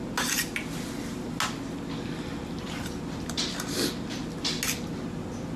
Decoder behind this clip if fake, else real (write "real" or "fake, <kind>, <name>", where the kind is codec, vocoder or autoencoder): real